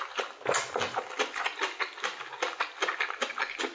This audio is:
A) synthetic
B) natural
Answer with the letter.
B